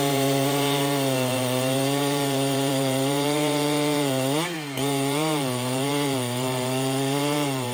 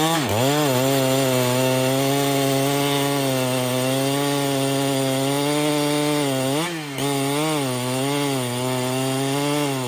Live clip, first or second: second